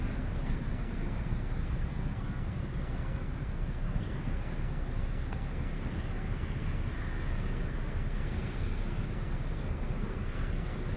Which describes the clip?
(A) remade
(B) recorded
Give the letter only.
A